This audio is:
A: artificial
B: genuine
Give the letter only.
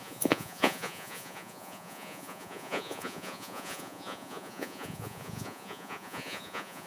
A